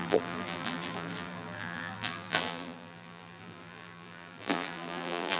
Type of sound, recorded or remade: remade